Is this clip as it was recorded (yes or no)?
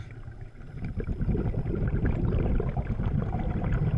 yes